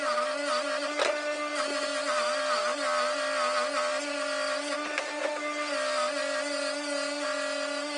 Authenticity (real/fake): real